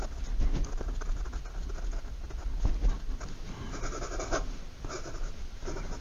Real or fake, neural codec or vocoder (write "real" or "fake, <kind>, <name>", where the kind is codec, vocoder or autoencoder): real